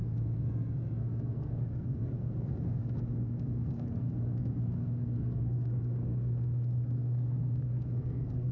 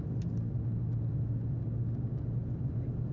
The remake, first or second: first